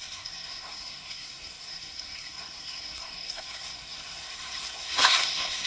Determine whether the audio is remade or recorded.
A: remade